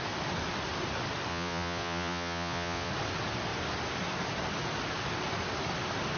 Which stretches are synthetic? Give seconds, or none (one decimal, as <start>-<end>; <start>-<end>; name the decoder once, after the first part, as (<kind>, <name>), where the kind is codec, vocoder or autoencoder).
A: 1.3-2.9 (vocoder, Vocos)